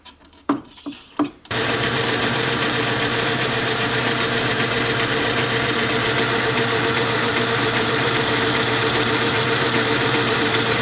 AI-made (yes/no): yes